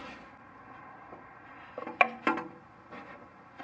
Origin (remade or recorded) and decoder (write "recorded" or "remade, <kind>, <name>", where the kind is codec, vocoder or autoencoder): recorded